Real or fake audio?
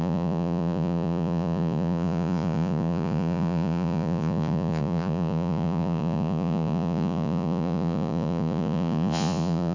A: fake